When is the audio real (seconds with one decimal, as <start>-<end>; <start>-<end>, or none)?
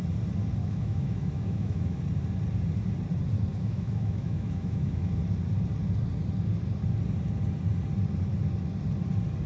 0.0-0.6; 2.0-3.5; 5.2-9.5